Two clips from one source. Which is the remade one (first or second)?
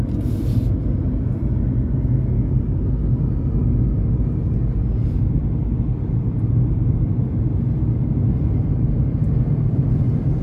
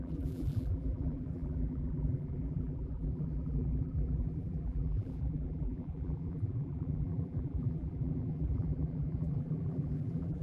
second